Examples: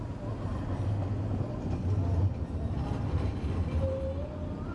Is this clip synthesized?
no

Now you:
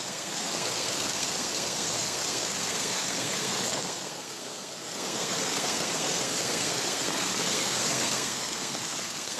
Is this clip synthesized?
yes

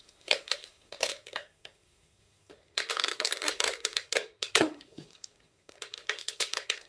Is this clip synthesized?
yes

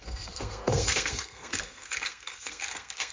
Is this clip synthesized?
yes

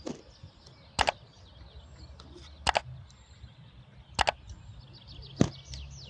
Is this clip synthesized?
no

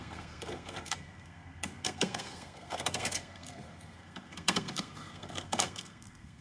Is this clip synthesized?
yes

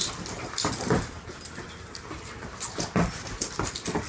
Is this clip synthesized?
no